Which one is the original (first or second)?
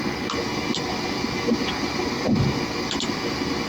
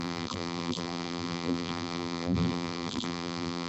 first